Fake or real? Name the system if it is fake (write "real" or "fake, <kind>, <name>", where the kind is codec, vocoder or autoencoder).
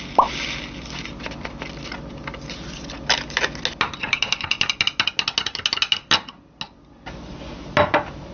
real